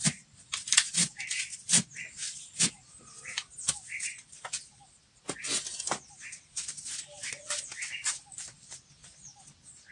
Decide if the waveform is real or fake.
real